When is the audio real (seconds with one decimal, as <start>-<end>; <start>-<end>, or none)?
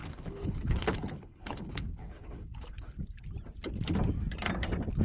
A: 3.0-5.0